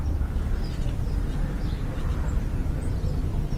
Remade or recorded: recorded